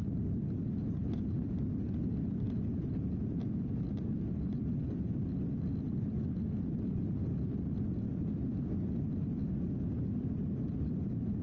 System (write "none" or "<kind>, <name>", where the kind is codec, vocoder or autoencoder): none